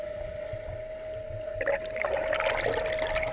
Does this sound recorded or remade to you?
recorded